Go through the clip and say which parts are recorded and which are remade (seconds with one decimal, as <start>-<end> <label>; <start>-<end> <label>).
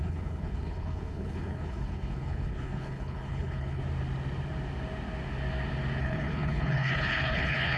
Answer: 0.0-3.8 remade; 3.8-6.0 recorded; 6.0-7.8 remade